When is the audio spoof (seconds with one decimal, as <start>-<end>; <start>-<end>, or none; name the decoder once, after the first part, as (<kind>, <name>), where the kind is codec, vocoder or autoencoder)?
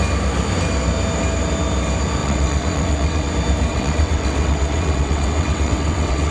2.2-3.3 (vocoder, WaveNeXt); 3.7-6.3